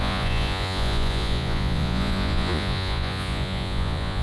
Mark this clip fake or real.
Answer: fake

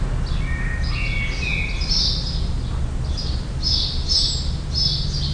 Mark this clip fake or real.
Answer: real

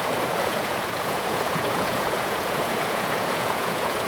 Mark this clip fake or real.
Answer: fake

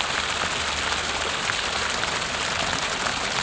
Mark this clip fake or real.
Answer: real